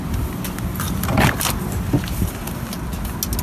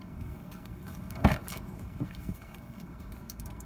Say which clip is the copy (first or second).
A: second